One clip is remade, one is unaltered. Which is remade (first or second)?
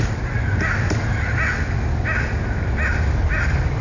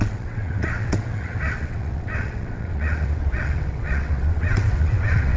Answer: second